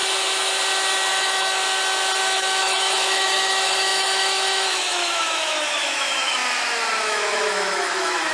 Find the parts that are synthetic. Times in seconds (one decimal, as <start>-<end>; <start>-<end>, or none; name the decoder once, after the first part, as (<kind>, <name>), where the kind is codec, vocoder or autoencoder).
1.1-1.6 (autoencoder, DAC-VAE); 2.2-6.4; 7.0-8.3